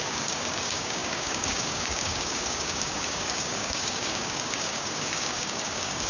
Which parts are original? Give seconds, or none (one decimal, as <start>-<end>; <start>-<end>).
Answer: none